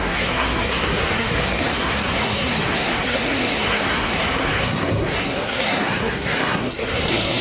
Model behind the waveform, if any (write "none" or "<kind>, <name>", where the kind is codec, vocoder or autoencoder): codec, SNAC